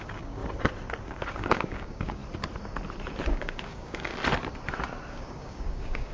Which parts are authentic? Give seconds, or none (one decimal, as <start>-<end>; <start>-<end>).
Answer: 0.4-1.0; 2.2-3.3; 4.1-5.1